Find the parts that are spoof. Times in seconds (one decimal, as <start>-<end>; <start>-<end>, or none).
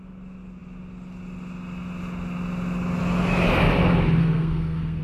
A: 4.2-5.0